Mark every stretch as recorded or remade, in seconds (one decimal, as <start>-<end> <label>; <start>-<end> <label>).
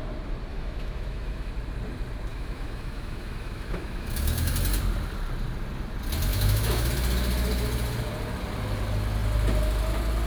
0.0-0.5 recorded; 0.5-1.5 remade; 1.5-2.3 recorded; 2.3-4.5 remade; 4.5-6.3 recorded; 6.3-6.9 remade; 6.9-10.3 recorded